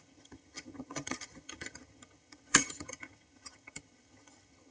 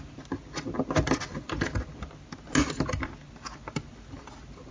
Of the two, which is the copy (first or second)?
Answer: first